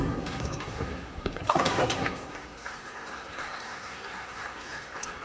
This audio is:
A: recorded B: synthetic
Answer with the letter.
B